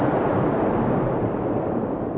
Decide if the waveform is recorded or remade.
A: recorded